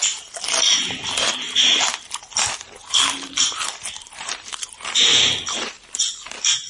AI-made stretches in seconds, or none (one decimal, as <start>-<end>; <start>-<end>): 2.8-6.2